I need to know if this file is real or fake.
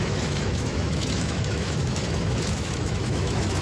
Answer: fake